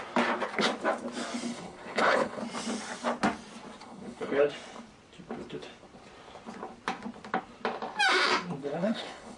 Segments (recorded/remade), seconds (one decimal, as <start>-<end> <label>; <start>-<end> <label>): 0.0-1.5 recorded; 1.5-2.4 remade; 2.4-3.8 recorded; 3.8-4.5 remade; 4.5-8.6 recorded; 8.6-9.4 remade